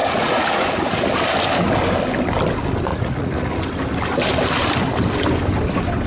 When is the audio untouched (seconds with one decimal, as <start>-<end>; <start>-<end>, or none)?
1.1-2.9; 3.6-6.1